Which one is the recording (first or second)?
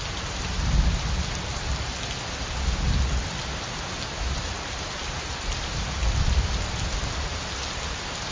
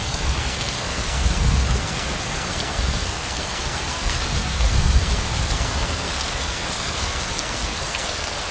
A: first